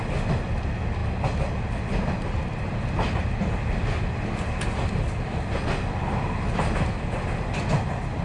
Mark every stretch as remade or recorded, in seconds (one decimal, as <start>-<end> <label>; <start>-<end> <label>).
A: 0.0-8.2 recorded